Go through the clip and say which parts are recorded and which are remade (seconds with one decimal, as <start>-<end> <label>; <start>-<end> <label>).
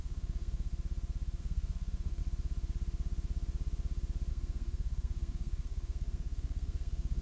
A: 0.0-0.7 remade; 0.7-1.4 recorded; 1.4-2.2 remade; 2.2-4.3 recorded; 4.3-7.2 remade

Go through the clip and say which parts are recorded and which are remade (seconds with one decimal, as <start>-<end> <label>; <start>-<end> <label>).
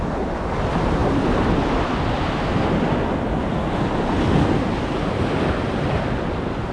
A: 0.0-6.7 recorded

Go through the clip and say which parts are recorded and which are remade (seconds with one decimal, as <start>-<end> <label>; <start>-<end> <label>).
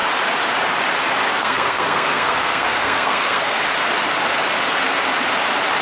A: 0.0-1.4 recorded; 1.4-3.6 remade; 3.6-5.8 recorded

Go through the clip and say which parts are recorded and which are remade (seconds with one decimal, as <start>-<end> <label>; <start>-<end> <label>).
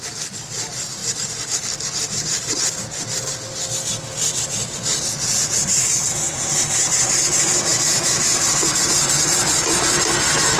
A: 0.0-7.7 recorded; 7.7-8.8 remade; 8.8-10.6 recorded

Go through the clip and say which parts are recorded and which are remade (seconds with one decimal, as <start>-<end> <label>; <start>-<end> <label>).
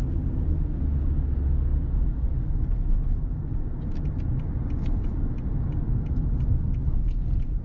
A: 0.0-7.6 recorded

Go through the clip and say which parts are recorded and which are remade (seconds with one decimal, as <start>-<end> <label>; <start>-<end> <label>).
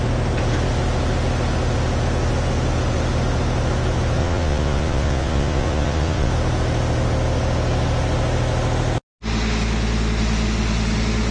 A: 0.0-4.2 recorded; 4.2-6.3 remade; 6.3-11.3 recorded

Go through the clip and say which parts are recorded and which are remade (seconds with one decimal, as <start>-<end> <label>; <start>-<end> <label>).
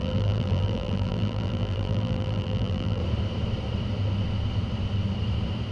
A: 0.0-3.0 remade; 3.0-5.7 recorded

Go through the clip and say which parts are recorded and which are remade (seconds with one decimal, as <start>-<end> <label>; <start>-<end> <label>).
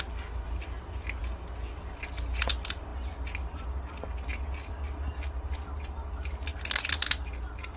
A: 0.0-7.8 recorded